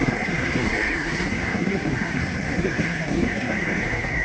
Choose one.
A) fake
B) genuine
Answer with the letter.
A